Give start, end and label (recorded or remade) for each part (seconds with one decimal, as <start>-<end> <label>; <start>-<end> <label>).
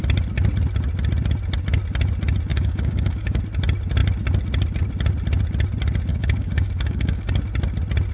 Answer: 0.0-2.5 recorded; 2.5-3.4 remade; 3.4-6.1 recorded; 6.1-7.3 remade; 7.3-8.1 recorded